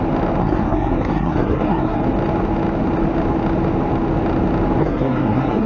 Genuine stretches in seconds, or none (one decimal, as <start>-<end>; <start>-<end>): 0.0-0.4; 2.0-4.8